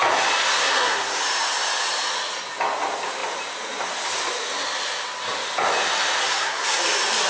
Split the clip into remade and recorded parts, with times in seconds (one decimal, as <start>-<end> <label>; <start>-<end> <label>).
0.0-0.5 recorded; 0.5-1.2 remade; 1.2-6.2 recorded; 6.2-6.8 remade; 6.8-7.3 recorded